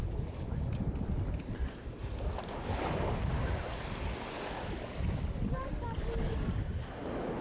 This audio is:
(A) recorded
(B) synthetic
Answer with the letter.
A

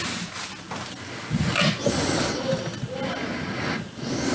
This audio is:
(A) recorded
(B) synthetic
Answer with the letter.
A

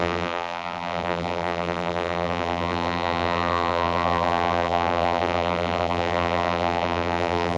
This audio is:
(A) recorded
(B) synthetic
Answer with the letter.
B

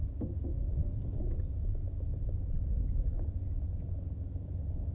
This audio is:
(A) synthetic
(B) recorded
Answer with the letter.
B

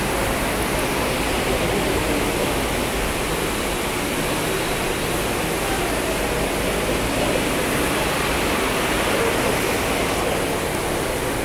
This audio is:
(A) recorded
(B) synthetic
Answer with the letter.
A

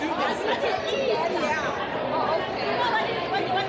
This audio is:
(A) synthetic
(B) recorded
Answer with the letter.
B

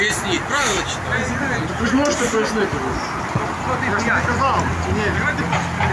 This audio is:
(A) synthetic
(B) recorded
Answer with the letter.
B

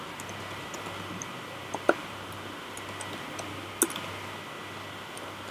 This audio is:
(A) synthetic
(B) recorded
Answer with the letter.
B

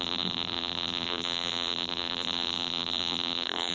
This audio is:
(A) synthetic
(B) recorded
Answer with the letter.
A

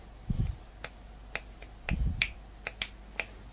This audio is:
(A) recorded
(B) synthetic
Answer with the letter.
A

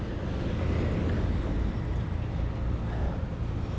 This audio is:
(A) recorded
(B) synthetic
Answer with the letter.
A